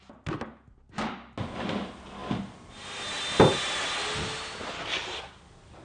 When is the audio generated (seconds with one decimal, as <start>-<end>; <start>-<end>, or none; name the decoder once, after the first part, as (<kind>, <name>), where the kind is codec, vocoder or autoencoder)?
none